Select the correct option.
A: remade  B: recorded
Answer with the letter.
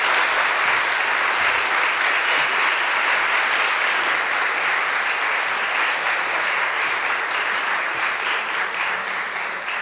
B